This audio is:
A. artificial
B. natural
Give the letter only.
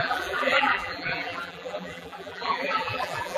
A